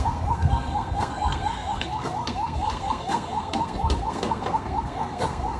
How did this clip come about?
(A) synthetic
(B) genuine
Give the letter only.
A